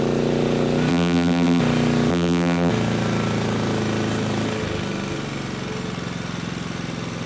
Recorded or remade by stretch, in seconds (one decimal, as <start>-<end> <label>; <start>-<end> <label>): 0.0-0.9 recorded; 0.9-1.6 remade; 1.6-2.1 recorded; 2.1-2.7 remade; 2.7-7.3 recorded